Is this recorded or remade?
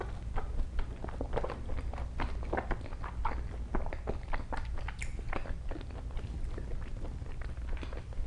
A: recorded